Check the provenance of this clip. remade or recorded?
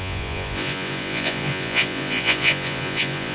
remade